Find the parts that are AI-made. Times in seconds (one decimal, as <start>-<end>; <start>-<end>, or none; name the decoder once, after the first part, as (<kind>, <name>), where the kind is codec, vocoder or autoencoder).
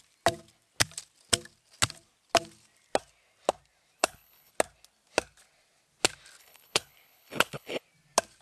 4.0-4.5 (codec, HILCodec); 6.4-7.8